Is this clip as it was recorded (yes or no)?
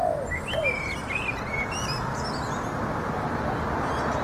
yes